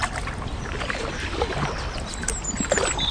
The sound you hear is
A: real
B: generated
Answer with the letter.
A